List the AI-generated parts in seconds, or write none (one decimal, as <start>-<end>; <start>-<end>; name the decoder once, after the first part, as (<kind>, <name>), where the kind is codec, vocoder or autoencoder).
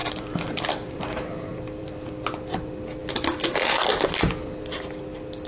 0.0-1.0 (vocoder, BigVGAN v2); 1.5-2.1